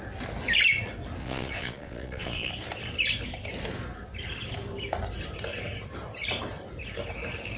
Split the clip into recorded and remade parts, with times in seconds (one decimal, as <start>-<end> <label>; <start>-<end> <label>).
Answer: 0.0-1.2 recorded; 1.2-2.5 remade; 2.5-7.6 recorded